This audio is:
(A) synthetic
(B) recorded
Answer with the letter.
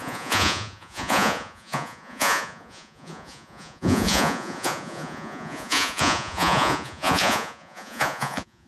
A